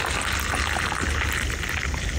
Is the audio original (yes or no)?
yes